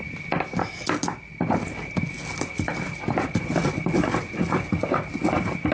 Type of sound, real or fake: real